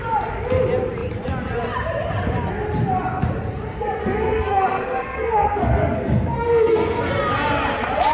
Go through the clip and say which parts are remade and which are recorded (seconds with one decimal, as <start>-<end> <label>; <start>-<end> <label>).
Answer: 0.0-4.0 recorded; 4.0-7.1 remade; 7.1-8.1 recorded